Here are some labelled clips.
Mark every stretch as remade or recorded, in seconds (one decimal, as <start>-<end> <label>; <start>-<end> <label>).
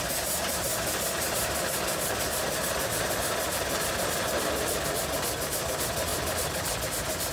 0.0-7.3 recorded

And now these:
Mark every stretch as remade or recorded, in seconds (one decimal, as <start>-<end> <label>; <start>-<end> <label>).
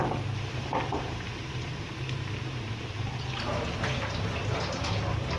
0.0-3.2 remade; 3.2-5.4 recorded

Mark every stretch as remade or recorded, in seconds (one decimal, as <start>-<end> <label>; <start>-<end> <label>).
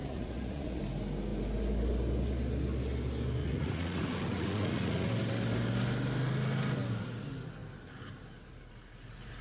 0.0-0.8 remade; 0.8-3.4 recorded; 3.4-5.1 remade; 5.1-9.4 recorded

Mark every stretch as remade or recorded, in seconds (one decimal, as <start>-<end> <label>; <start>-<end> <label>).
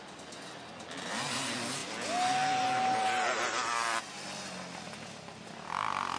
0.0-6.2 recorded